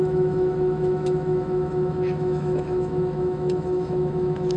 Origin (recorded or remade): remade